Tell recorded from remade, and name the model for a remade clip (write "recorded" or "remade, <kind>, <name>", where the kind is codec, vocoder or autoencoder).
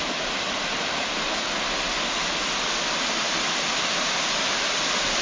recorded